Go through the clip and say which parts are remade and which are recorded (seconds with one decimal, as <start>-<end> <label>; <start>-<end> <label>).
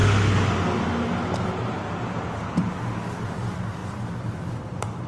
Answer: 0.0-5.1 recorded